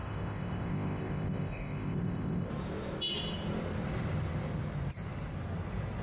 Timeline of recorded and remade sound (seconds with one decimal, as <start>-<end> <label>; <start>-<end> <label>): 0.0-2.5 remade; 2.5-6.0 recorded